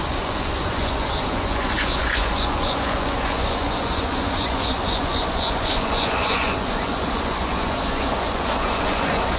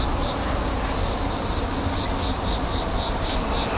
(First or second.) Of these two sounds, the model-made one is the first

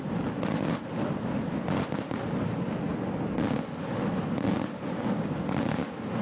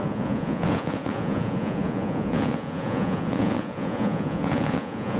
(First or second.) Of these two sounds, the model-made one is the second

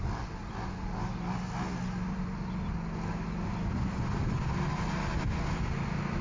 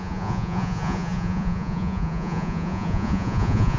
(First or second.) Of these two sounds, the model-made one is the second